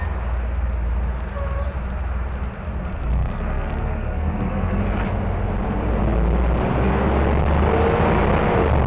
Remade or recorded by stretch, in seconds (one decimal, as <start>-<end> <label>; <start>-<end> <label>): 0.0-2.8 recorded; 2.8-4.8 remade; 4.8-8.9 recorded